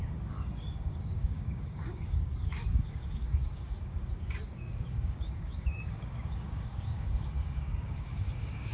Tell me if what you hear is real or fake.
fake